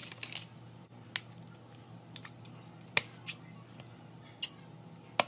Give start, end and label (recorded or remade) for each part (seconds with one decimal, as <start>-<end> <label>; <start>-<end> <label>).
0.0-5.3 recorded